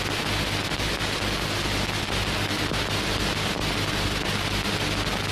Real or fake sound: real